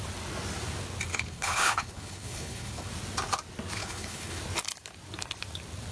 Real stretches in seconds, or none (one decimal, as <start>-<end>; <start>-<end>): 0.0-1.1; 2.9-3.8; 4.4-5.9